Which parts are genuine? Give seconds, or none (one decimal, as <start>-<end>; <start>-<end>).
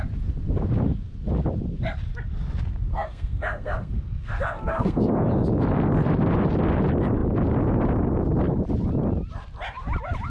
0.0-2.9; 5.2-10.3